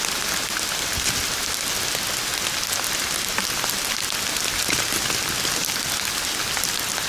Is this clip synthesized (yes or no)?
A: no